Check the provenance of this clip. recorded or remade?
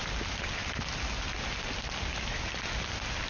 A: recorded